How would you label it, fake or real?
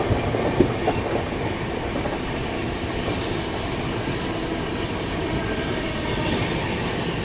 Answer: real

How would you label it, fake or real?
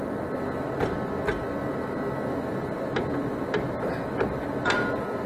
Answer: real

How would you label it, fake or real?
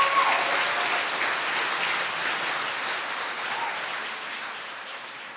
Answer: real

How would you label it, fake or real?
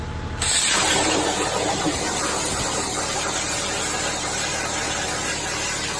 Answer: real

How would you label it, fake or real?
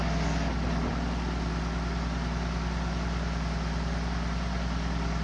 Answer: real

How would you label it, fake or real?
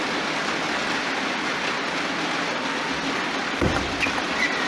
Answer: real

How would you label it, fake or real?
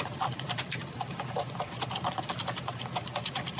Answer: real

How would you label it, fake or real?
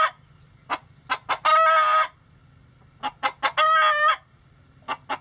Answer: real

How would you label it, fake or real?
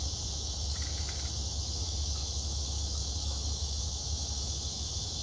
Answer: fake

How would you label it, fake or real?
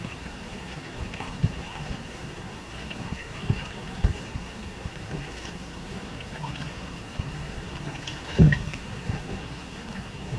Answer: fake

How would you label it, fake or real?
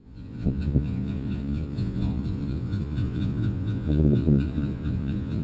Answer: fake